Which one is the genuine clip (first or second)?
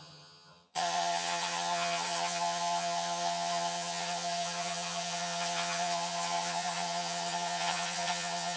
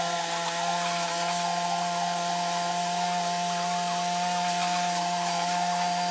second